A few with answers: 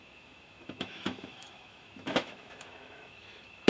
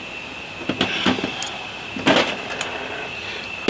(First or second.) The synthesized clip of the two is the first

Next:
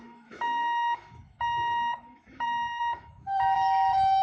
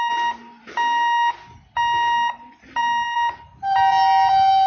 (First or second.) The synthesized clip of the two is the first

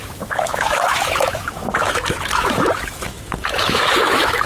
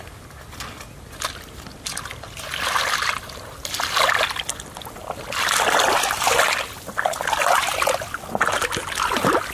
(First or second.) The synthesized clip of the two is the first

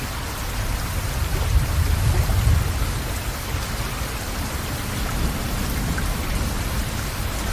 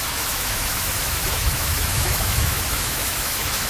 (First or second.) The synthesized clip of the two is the second